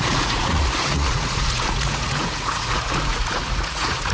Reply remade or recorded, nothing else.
remade